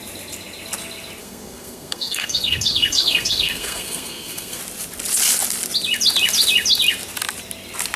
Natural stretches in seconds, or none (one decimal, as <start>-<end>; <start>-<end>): 0.0-1.2; 4.6-8.0